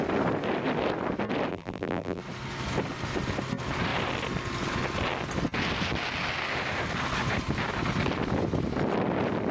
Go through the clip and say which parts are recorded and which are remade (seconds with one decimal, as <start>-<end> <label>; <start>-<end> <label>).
0.0-1.5 recorded; 1.5-2.2 remade; 2.2-9.5 recorded